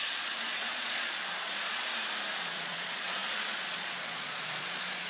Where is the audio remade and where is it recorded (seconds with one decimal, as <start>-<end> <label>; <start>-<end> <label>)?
0.0-1.9 remade; 1.9-2.4 recorded; 2.4-5.1 remade